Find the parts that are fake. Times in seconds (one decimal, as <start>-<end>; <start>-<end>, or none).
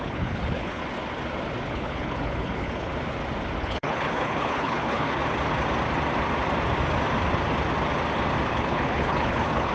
0.0-0.8; 1.7-2.9; 3.6-5.2; 8.5-9.7